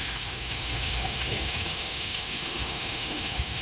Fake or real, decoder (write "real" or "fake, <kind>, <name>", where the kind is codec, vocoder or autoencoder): fake, autoencoder, DAC-VAE